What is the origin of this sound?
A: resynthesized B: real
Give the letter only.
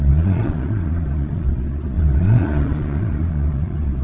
A